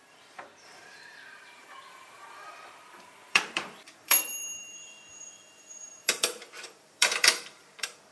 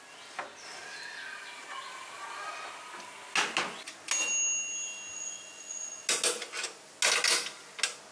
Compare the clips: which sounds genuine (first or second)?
second